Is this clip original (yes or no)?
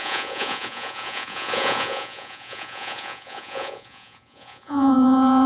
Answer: no